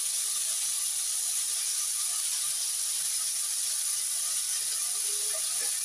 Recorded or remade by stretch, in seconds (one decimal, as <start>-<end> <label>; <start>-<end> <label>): 0.0-5.8 recorded